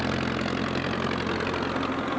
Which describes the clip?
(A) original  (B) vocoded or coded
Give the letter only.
A